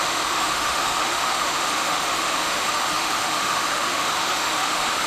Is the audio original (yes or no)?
no